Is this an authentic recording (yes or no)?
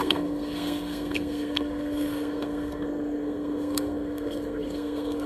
no